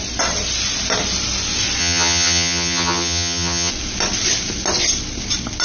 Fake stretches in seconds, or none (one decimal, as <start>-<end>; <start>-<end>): 1.8-3.7